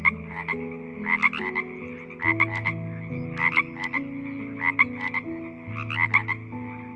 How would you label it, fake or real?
real